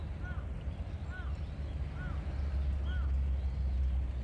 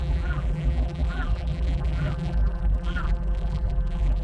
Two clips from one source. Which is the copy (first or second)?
second